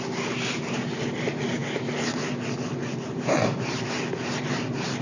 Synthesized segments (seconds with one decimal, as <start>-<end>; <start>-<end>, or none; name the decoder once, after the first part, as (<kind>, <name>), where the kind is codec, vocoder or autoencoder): none